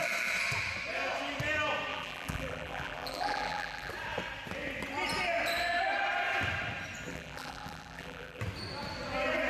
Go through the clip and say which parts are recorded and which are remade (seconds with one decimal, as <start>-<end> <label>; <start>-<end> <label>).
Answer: 0.0-1.9 recorded; 1.9-3.9 remade; 3.9-7.1 recorded; 7.1-8.4 remade; 8.4-9.5 recorded